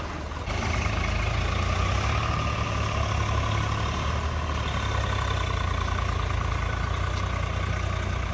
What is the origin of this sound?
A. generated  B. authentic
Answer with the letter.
B